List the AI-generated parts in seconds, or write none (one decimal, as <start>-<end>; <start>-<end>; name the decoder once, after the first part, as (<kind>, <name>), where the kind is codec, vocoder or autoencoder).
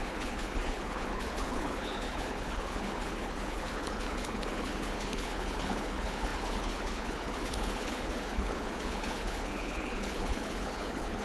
0.0-11.2 (codec, HILCodec)